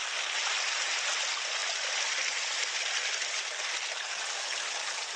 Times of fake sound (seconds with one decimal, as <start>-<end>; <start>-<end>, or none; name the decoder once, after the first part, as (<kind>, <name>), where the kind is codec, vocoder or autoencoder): none